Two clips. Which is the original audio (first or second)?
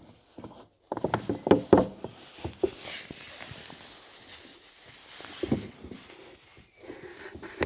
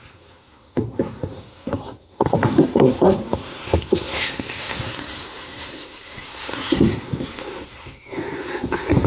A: first